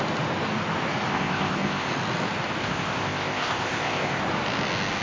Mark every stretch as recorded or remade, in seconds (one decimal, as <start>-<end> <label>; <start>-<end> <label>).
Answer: 0.0-1.1 recorded; 1.1-1.9 remade; 1.9-2.6 recorded; 2.6-4.2 remade; 4.2-5.0 recorded